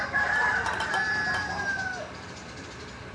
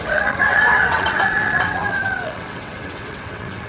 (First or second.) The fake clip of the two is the second